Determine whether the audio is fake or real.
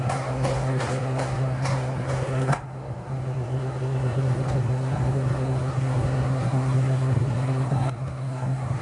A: fake